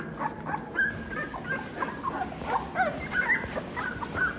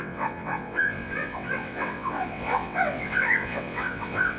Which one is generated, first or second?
second